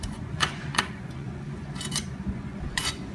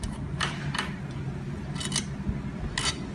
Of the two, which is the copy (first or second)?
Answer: first